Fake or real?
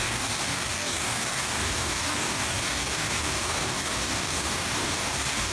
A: fake